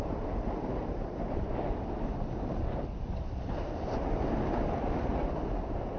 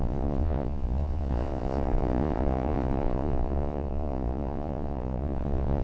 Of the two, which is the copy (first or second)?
second